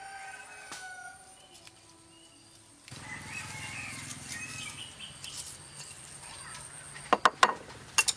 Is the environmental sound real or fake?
real